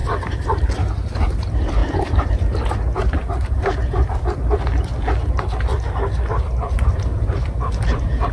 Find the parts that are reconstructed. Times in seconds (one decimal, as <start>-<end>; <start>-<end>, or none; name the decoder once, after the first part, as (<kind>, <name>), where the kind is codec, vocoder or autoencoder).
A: 0.0-0.7 (vocoder, BigVGAN v2); 1.8-4.5; 7.1-7.7